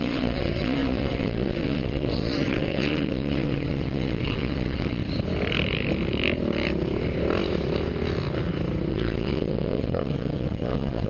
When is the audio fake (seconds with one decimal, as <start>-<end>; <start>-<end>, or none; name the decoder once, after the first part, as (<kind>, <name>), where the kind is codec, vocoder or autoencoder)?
0.0-5.0 (vocoder, WaveNeXt); 8.9-11.1